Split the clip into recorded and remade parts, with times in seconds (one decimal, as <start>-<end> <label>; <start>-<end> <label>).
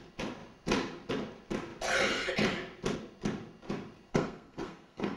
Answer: 0.0-4.1 recorded; 4.1-5.2 remade